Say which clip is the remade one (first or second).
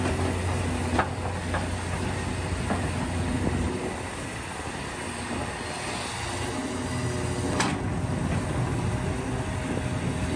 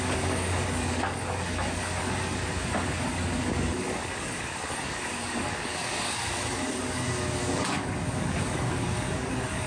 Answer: second